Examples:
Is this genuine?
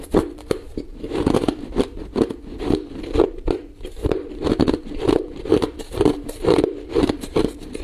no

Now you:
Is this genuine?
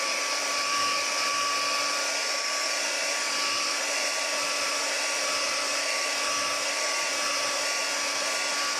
yes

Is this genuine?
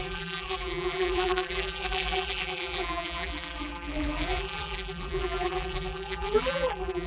no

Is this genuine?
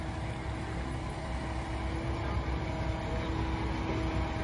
yes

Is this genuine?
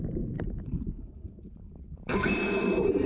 no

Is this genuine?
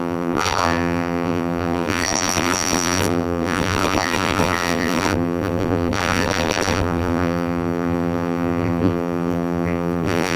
no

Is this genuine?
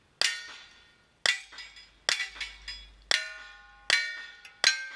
yes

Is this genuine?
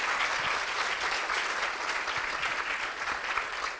yes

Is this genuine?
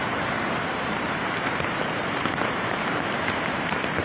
no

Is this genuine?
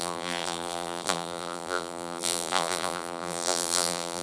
no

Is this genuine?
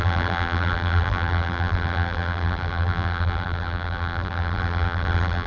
no